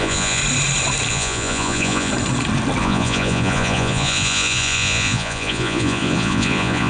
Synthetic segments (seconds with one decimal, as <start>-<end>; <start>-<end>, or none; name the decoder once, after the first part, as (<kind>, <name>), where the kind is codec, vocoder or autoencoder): 0.0-0.4 (vocoder, Vocos); 1.1-2.1; 2.8-6.9